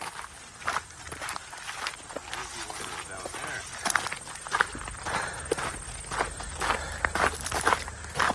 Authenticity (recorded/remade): recorded